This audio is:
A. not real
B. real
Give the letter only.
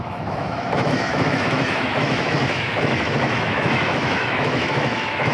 A